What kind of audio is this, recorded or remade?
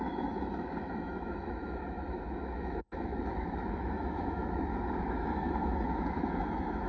remade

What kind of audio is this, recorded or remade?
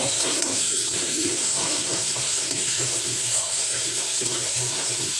remade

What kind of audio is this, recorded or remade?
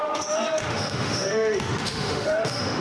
remade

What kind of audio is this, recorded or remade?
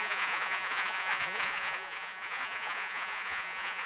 remade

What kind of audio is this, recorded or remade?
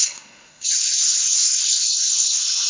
remade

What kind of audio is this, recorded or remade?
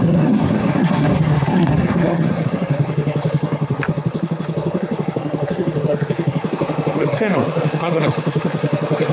remade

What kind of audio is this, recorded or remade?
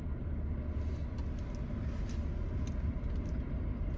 recorded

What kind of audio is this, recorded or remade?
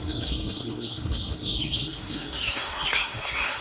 remade